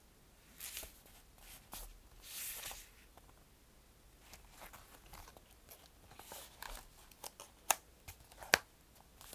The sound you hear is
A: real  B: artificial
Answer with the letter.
A